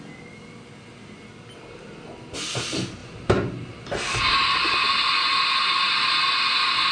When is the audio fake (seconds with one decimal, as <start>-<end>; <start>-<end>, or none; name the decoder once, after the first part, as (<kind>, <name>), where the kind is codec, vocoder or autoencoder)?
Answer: 3.0-4.2 (vocoder, BigVGAN v2)